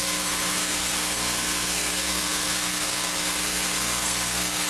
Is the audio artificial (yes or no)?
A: yes